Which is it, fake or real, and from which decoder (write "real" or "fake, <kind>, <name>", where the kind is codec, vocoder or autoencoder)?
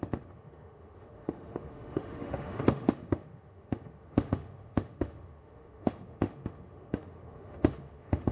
fake, autoencoder, DAC-VAE